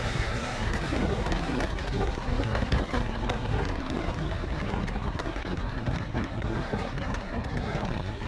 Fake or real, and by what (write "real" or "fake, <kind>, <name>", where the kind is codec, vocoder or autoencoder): fake, codec, SNAC